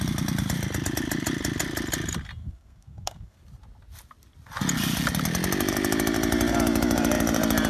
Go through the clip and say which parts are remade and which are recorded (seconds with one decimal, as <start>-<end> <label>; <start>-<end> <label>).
0.0-2.4 recorded; 2.4-3.4 remade; 3.4-7.7 recorded